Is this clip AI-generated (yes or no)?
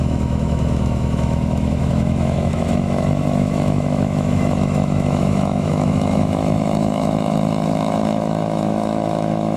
yes